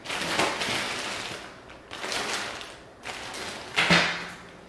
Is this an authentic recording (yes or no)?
yes